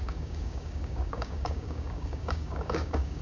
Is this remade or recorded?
remade